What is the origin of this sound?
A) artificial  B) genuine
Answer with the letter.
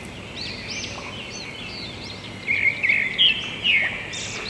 B